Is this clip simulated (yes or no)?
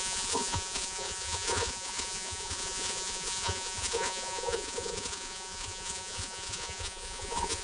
yes